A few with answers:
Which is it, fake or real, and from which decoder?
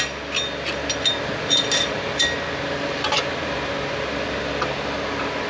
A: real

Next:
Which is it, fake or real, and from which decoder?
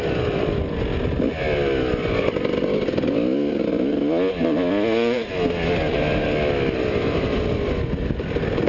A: real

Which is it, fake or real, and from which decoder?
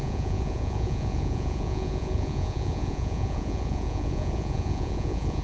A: fake, vocoder, Vocos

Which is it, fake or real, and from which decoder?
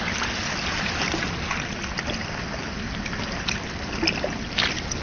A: real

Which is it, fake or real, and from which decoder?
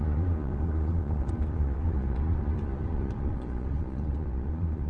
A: fake, vocoder, Vocos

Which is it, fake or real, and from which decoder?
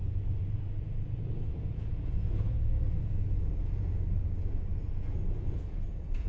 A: fake, vocoder, Vocos